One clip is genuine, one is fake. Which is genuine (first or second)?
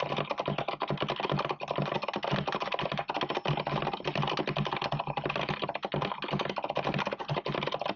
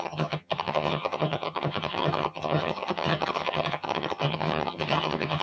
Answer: first